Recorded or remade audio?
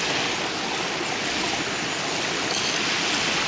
recorded